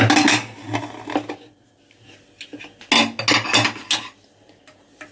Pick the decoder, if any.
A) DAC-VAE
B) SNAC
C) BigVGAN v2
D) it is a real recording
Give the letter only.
D